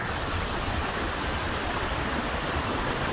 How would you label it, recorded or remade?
remade